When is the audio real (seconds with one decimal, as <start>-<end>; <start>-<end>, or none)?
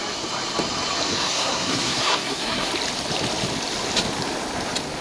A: 0.0-1.1; 2.7-5.0